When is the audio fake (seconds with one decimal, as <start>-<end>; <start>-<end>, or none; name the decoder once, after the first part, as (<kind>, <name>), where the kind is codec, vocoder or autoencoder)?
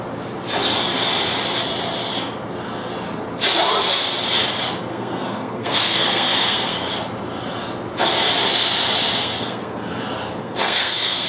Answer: 4.9-6.9 (codec, SNAC); 9.2-10.0; 10.4-11.3